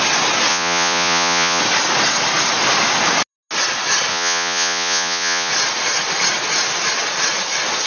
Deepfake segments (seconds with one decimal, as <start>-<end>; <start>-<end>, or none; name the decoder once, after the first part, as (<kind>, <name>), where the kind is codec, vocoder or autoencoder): 0.5-1.6 (vocoder, Vocos); 4.1-5.5